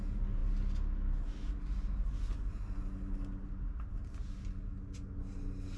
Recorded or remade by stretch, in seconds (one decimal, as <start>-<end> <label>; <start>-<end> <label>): 0.0-5.8 recorded